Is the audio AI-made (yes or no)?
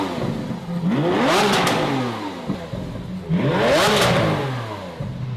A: no